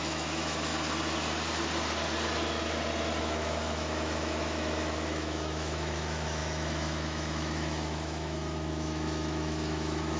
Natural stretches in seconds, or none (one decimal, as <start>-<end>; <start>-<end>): 0.7-3.2